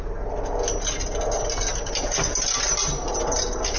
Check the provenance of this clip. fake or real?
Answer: real